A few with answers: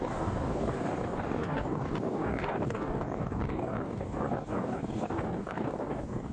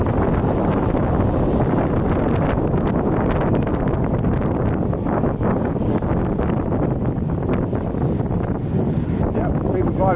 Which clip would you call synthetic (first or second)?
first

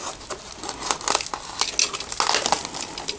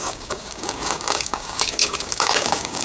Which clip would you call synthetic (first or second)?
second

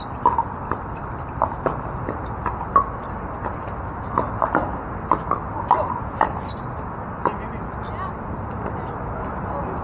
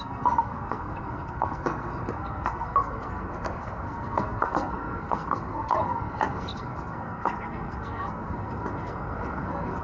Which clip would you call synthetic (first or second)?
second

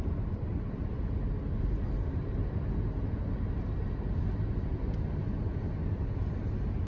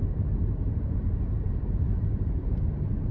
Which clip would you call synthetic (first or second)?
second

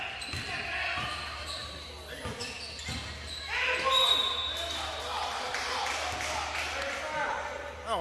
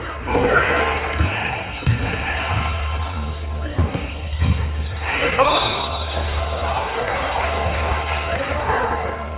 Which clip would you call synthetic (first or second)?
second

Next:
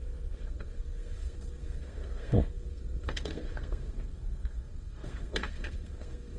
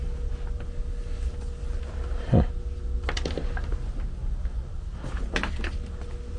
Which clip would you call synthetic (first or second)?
first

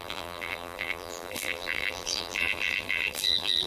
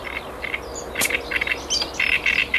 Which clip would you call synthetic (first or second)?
first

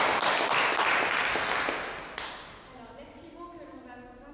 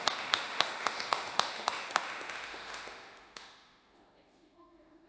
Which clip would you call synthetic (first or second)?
second